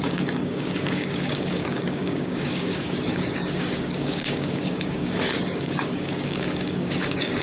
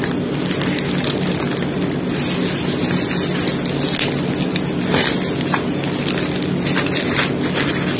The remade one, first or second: first